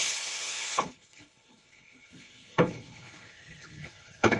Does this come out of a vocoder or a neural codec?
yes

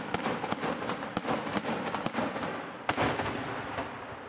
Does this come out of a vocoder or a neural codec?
no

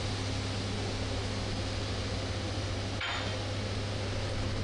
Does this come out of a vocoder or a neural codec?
no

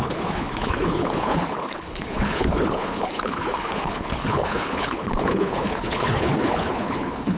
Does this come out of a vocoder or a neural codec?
yes